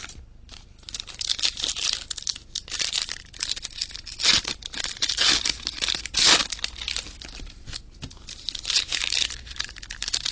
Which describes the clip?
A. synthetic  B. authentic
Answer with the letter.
B